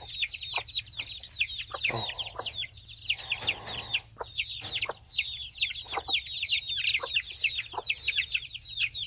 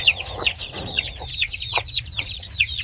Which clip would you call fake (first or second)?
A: second